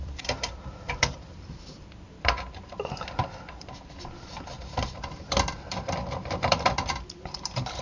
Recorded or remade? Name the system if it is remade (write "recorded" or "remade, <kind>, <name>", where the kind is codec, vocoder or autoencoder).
remade, vocoder, BigVGAN v2